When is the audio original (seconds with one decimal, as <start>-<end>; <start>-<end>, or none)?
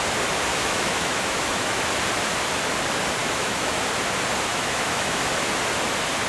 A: 0.0-0.5; 1.8-3.2; 3.8-4.5; 5.3-6.3